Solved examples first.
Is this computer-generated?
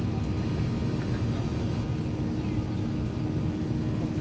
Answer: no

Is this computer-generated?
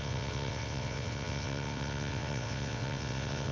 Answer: yes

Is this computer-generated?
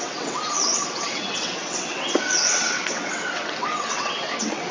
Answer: yes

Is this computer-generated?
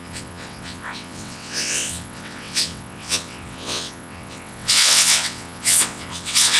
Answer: yes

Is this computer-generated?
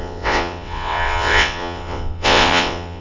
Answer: yes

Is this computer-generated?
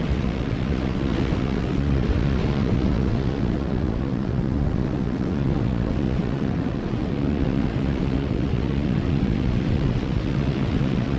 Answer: yes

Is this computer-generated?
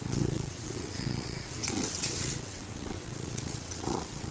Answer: yes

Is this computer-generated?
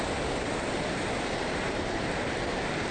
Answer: no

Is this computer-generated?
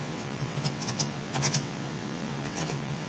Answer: yes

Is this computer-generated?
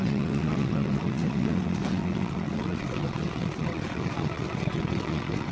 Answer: yes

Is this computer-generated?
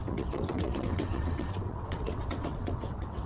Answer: yes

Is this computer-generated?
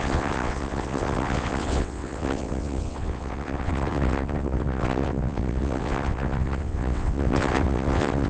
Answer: yes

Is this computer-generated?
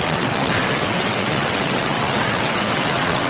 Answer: yes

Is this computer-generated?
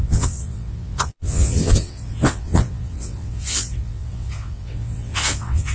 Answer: yes